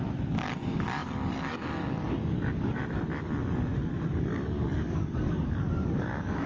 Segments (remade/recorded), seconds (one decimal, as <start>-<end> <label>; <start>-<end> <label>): 0.0-2.8 remade; 2.8-4.1 recorded; 4.1-6.5 remade